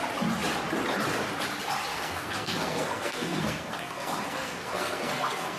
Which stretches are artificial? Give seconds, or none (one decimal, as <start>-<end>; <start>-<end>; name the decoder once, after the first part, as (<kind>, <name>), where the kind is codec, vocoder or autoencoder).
1.9-5.6 (codec, SNAC)